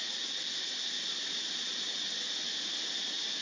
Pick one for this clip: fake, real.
real